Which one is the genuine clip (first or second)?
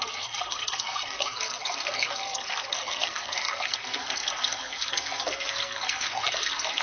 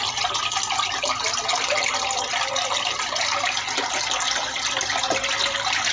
second